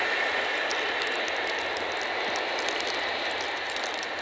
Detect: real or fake real